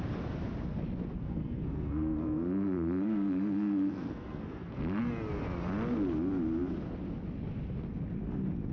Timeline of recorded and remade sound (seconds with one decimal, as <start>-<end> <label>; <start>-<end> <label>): 0.0-1.2 recorded; 1.2-5.0 remade; 5.0-8.7 recorded